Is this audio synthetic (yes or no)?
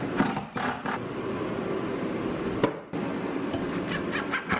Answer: no